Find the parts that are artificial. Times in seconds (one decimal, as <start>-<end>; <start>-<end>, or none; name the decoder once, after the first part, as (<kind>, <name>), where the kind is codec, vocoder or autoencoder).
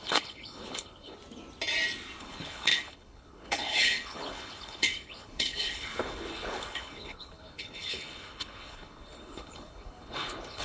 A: 0.0-1.2 (codec, HILCodec); 2.2-10.6